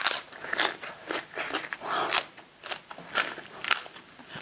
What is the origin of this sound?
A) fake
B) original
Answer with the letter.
B